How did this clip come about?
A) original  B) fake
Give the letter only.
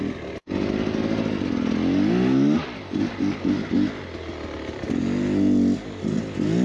A